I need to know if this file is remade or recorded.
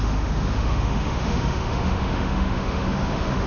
remade